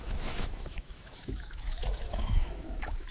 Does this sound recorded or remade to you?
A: remade